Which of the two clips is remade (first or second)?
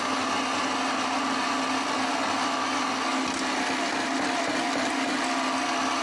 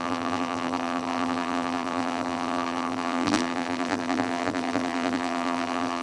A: second